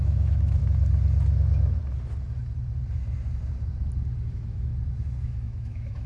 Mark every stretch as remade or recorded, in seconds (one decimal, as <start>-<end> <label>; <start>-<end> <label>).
0.0-0.6 remade; 0.6-4.3 recorded; 4.3-4.7 remade; 4.7-5.2 recorded; 5.2-6.1 remade